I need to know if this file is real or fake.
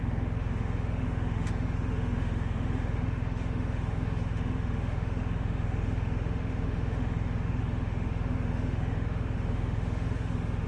fake